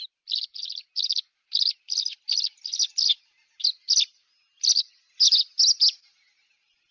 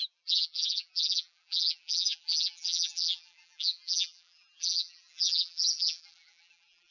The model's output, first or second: second